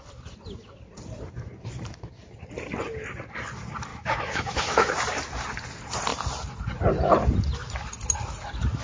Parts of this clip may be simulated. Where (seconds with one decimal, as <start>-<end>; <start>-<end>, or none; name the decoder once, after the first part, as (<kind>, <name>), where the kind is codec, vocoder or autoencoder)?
3.9-4.9 (autoencoder, DAC-VAE)